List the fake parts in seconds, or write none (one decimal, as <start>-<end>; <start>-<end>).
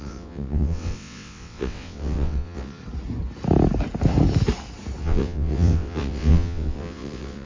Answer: 0.0-2.8; 5.0-7.5